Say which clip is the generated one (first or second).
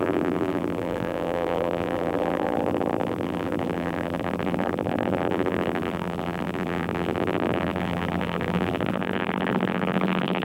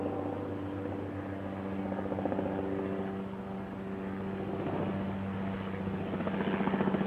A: first